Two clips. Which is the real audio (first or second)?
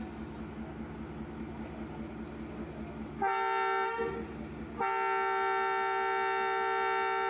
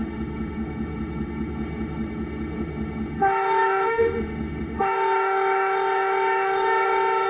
first